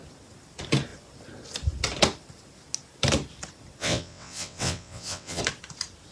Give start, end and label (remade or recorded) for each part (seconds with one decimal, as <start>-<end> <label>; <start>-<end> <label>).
0.0-3.8 recorded; 3.8-5.4 remade; 5.4-6.1 recorded